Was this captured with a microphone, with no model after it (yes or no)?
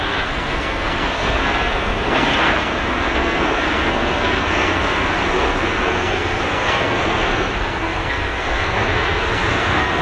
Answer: no